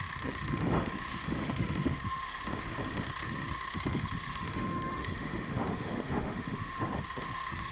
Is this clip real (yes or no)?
no